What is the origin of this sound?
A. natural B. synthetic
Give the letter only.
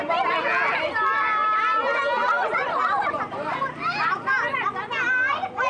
A